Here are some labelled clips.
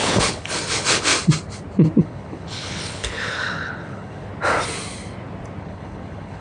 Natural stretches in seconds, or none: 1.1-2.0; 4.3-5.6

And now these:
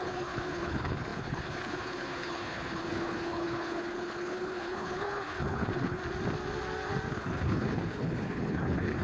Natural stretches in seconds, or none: 6.0-7.1

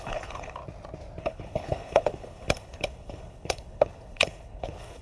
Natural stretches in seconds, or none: 0.6-1.2

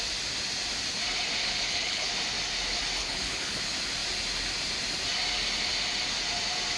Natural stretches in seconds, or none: 0.0-1.4; 2.1-3.0; 3.6-6.8

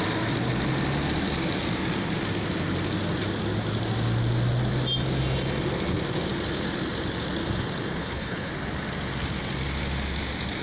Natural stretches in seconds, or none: 0.0-8.0; 8.5-10.6

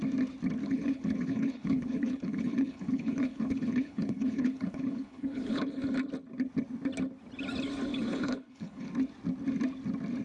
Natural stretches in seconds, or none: 0.0-0.6; 5.8-7.9; 8.9-10.2

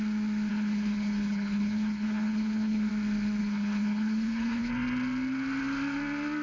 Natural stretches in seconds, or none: 0.0-0.5; 2.9-3.4; 4.7-6.4

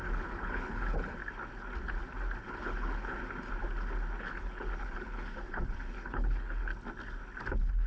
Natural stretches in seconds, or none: 1.2-2.4; 3.2-4.2; 6.7-7.5